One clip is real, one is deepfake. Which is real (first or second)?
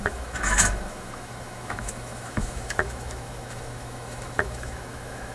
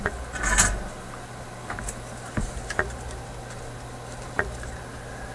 second